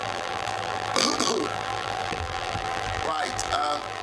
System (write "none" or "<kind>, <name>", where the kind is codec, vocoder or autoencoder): vocoder, BigVGAN v2